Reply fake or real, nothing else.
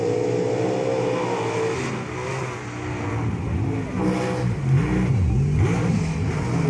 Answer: real